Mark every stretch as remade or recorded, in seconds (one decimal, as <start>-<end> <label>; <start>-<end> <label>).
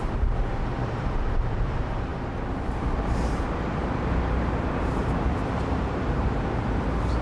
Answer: 0.0-7.2 remade